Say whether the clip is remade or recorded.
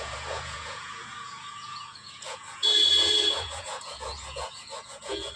remade